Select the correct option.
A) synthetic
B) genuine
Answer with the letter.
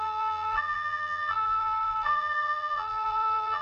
A